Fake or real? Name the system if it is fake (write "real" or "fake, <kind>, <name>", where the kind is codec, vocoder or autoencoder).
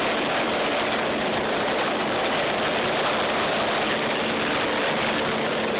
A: real